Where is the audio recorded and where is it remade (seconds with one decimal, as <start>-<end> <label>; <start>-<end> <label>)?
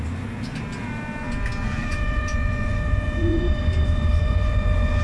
0.0-1.8 recorded; 1.8-5.0 remade